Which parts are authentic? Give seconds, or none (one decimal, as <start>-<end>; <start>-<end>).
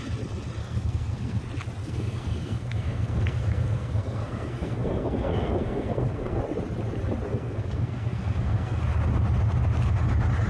0.0-0.6; 1.4-1.8; 6.4-7.3; 8.8-10.5